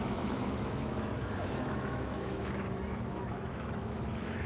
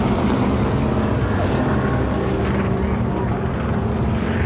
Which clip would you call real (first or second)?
second